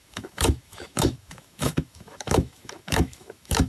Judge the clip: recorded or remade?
remade